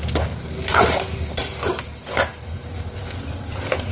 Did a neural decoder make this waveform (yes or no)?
no